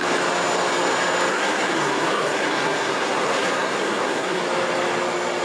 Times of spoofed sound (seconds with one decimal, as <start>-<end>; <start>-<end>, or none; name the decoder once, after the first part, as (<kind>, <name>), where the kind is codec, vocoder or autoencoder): 1.3-4.4 (codec, SNAC)